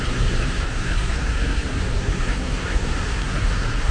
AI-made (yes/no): yes